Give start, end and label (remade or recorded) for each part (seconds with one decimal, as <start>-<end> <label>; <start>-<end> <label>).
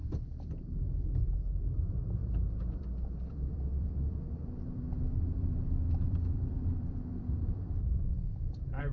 0.0-8.9 remade